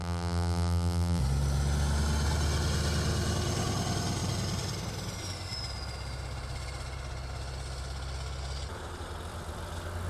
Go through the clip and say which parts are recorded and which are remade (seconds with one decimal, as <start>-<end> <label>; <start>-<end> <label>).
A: 0.0-1.2 remade; 1.2-10.1 recorded